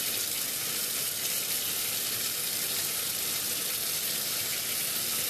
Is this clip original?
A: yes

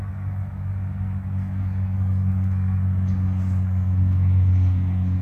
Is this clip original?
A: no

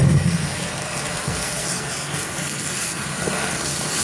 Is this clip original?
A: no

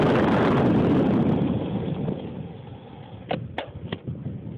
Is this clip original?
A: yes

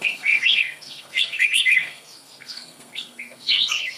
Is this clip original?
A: no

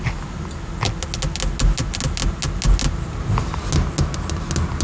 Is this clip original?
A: yes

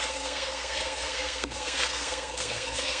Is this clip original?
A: no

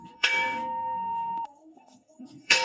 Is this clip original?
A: no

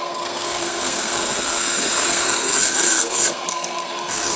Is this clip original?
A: no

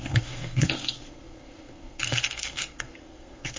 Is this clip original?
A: no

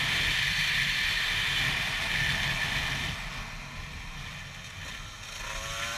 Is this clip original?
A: yes